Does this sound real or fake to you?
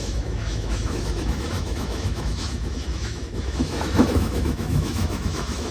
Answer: fake